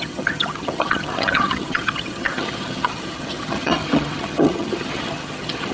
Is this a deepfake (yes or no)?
yes